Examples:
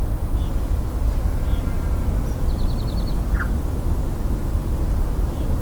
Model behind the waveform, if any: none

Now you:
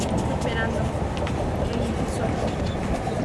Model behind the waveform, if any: none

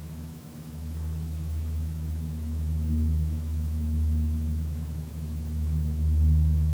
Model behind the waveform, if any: autoencoder, DAC-VAE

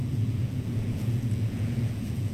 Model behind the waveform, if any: vocoder, Vocos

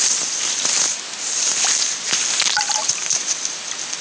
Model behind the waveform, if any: none